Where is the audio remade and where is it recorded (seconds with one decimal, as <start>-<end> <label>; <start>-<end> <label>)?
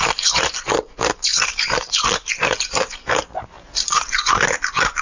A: 0.0-5.0 remade